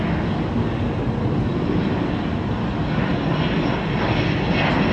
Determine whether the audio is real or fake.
real